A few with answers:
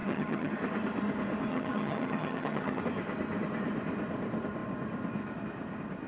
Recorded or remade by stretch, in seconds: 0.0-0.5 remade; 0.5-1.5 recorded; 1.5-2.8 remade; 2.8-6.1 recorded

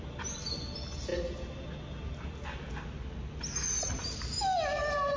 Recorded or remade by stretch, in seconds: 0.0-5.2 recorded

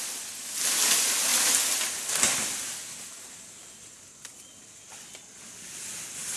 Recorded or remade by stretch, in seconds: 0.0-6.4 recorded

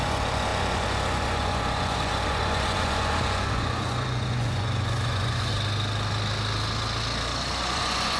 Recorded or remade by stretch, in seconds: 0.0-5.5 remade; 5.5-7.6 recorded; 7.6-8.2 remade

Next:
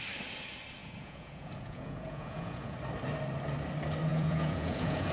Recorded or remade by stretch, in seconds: 0.0-0.8 recorded; 0.8-2.8 remade; 2.8-4.1 recorded; 4.1-5.1 remade

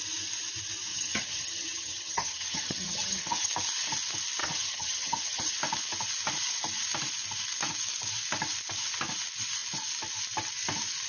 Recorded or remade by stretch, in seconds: 0.0-0.9 recorded; 0.9-3.5 remade; 3.5-4.4 recorded; 4.4-5.5 remade; 5.5-11.1 recorded